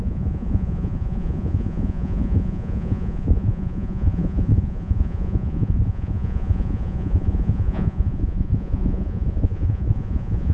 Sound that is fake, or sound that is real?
fake